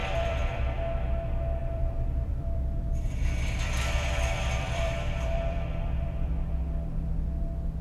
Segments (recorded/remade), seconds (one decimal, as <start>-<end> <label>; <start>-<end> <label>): 0.0-0.6 remade; 0.6-1.6 recorded; 1.6-6.3 remade; 6.3-7.8 recorded